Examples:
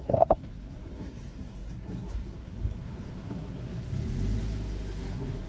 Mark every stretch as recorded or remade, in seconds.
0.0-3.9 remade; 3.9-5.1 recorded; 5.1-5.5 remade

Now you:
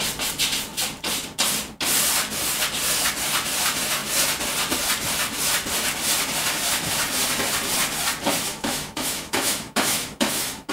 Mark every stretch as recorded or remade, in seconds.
0.0-8.5 recorded; 8.5-10.7 remade

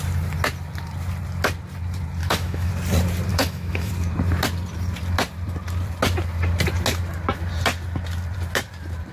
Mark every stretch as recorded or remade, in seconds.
0.0-2.2 recorded; 2.2-2.7 remade; 2.7-3.3 recorded; 3.3-3.9 remade; 3.9-9.1 recorded

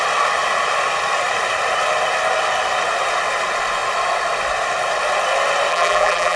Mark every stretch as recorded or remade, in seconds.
0.0-5.7 recorded; 5.7-6.4 remade

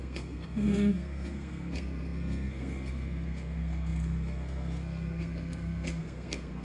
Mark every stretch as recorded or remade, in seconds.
0.0-6.6 remade

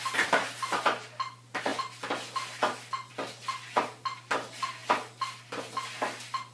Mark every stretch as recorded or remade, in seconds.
0.0-6.5 recorded

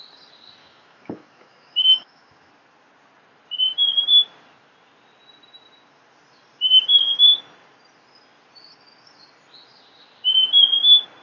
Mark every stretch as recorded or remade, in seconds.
0.0-0.6 recorded; 0.6-2.5 remade; 2.5-11.2 recorded

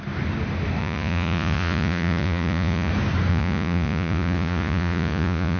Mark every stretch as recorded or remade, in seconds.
0.0-0.8 recorded; 0.8-2.9 remade; 2.9-3.3 recorded; 3.3-5.6 remade